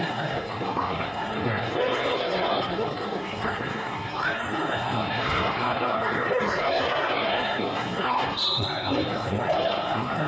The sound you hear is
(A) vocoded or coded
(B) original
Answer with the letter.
A